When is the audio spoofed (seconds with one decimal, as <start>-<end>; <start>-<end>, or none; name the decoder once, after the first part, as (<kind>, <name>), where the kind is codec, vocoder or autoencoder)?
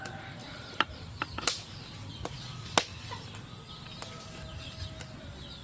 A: 0.4-2.1 (vocoder, BigVGAN v2)